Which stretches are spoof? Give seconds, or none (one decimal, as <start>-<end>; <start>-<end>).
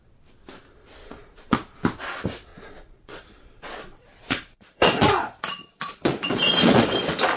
1.0-1.8; 2.5-6.8